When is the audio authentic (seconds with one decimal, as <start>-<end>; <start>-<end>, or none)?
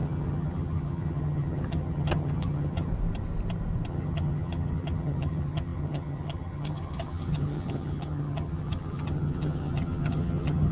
2.9-3.9